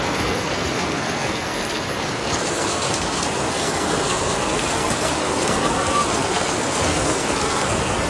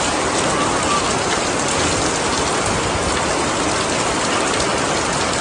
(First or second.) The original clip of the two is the second